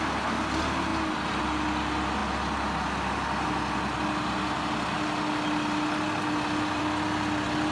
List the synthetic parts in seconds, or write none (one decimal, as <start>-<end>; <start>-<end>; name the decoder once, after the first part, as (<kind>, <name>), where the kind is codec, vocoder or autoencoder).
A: none